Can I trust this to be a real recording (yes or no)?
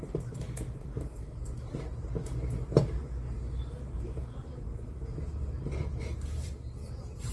no